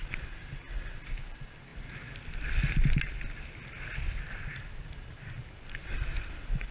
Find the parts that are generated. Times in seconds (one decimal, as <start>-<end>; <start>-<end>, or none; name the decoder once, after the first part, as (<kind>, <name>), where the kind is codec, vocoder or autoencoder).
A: none